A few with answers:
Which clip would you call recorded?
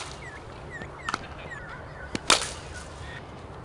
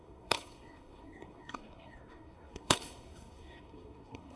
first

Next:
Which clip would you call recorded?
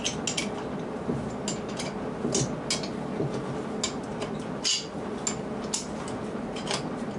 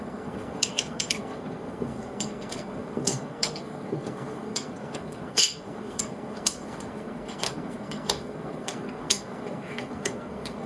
first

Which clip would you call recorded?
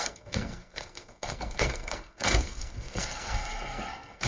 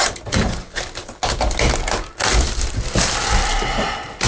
second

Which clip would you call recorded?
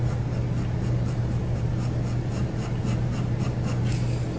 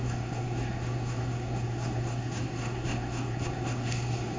first